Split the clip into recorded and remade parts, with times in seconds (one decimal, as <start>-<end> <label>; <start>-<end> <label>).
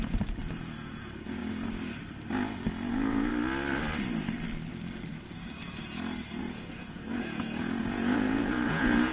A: 0.0-0.4 remade; 0.4-0.9 recorded; 0.9-1.4 remade; 1.4-2.9 recorded; 2.9-3.3 remade; 3.3-6.4 recorded; 6.4-9.1 remade